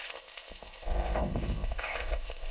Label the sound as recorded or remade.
remade